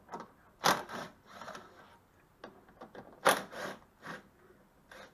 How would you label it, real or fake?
real